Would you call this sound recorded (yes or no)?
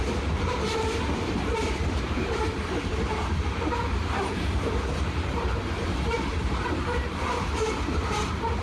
no